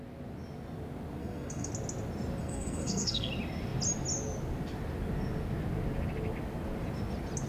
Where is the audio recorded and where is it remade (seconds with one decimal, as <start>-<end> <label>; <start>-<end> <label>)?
0.0-1.2 recorded; 1.2-1.7 remade; 1.7-2.4 recorded; 2.4-3.3 remade; 3.3-7.5 recorded